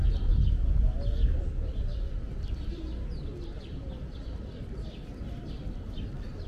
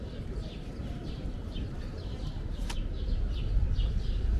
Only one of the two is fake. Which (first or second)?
second